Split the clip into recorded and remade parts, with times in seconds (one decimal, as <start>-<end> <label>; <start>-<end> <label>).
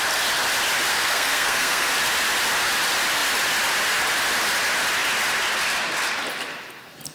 0.0-0.9 recorded; 0.9-1.9 remade; 1.9-7.1 recorded